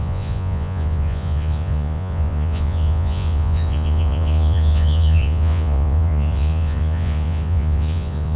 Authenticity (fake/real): fake